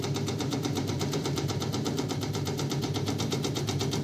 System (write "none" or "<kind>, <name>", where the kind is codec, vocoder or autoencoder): vocoder, BigVGAN v2